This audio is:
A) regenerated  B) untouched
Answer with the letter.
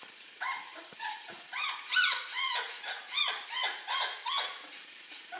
A